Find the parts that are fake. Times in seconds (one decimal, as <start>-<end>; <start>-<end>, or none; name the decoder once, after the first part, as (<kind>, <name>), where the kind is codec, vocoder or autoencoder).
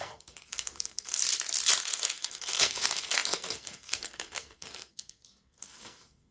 0.0-1.2 (codec, SNAC); 1.8-6.3